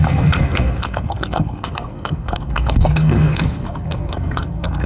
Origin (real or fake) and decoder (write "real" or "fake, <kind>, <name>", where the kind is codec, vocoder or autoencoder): fake, codec, SNAC